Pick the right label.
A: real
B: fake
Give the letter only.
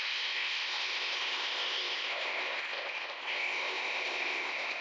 B